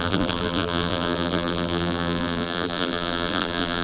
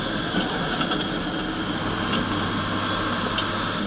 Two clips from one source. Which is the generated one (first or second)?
first